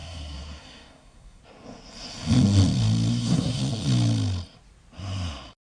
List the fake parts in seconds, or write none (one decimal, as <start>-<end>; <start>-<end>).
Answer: 0.0-1.4; 3.1-3.6